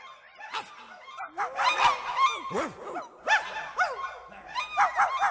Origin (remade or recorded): recorded